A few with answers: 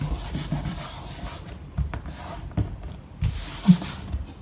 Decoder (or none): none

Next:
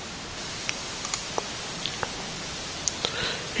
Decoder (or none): none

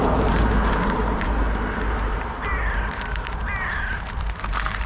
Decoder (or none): vocoder, BigVGAN v2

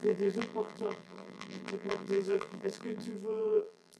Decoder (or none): vocoder, BigVGAN v2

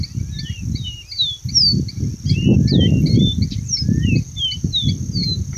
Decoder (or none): none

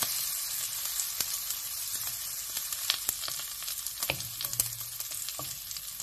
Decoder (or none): none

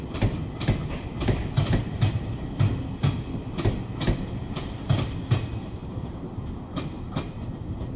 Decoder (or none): none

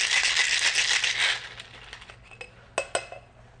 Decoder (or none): none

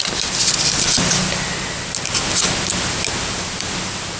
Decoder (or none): none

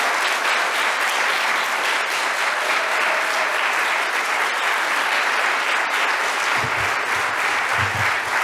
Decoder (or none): none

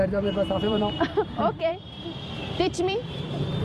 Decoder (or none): vocoder, BigVGAN v2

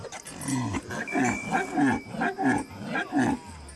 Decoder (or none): none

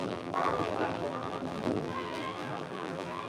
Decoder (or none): vocoder, BigVGAN v2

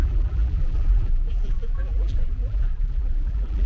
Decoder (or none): vocoder, BigVGAN v2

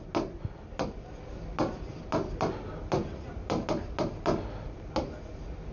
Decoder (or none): none